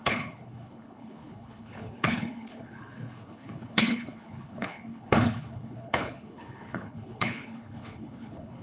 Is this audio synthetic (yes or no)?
yes